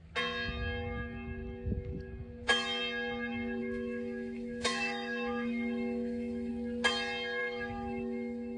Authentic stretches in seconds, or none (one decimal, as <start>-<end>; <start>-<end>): 0.0-3.6; 6.5-7.4